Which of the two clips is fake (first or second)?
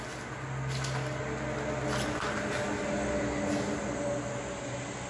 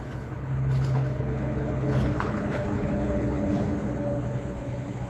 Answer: second